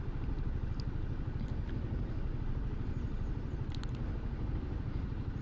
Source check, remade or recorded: recorded